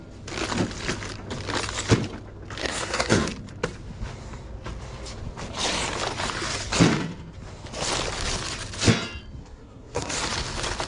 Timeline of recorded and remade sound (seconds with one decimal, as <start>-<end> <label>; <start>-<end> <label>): 0.0-2.6 recorded; 2.6-3.3 remade; 3.3-9.4 recorded; 9.4-10.1 remade; 10.1-10.9 recorded